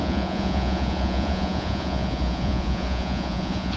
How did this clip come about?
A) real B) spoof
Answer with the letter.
B